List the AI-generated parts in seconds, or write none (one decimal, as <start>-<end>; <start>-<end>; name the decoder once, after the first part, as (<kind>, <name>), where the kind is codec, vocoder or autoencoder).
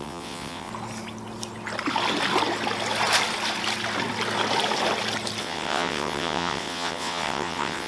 0.0-0.7 (vocoder, WaveNeXt); 5.4-7.9